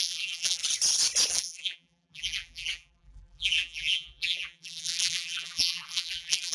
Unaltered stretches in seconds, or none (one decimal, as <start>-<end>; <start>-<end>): 0.6-1.3